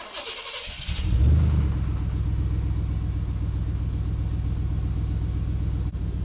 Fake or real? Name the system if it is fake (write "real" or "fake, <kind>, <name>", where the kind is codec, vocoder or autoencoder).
real